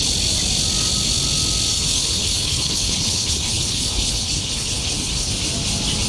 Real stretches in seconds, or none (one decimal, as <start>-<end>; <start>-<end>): 0.0-1.7; 5.3-6.1